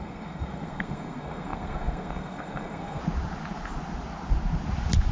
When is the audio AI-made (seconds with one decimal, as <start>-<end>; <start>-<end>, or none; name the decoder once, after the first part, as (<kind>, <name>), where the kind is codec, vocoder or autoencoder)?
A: 0.0-3.0 (codec, SNAC)